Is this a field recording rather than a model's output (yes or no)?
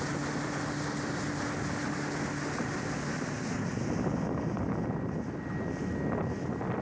yes